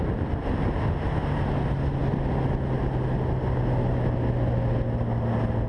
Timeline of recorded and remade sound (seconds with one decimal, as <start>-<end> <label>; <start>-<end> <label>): 0.0-5.7 recorded